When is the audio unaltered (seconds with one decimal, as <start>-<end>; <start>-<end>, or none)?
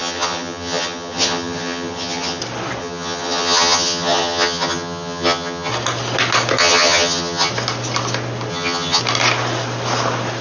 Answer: 2.4-2.8; 5.7-6.6; 7.5-8.5; 9.0-10.4